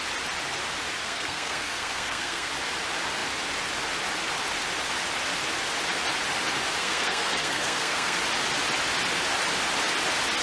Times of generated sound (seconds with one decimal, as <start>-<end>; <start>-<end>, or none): 1.0-2.5; 6.8-8.2